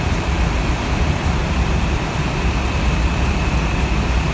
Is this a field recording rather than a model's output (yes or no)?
no